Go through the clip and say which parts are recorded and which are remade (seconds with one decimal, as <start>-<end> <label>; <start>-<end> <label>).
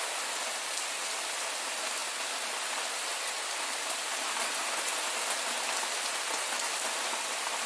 0.0-7.7 recorded